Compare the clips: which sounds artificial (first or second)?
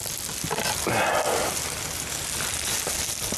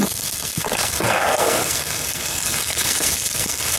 second